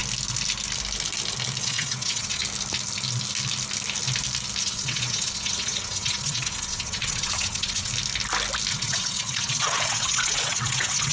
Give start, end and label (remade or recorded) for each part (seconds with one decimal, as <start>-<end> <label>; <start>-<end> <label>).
0.0-1.6 recorded; 1.6-2.4 remade; 2.4-4.6 recorded; 4.6-7.9 remade; 7.9-8.7 recorded; 8.7-11.1 remade